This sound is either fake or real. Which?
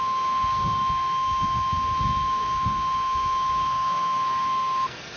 fake